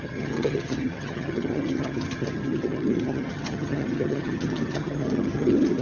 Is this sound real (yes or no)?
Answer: no